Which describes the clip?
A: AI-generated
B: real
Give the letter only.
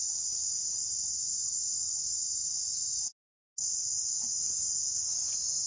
B